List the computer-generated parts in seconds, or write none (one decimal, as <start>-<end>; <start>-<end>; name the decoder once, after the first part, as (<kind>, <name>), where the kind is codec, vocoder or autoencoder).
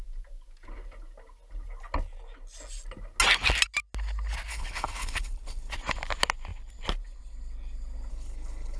4.5-5.7 (codec, HILCodec); 8.1-8.8